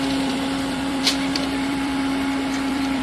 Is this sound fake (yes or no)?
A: yes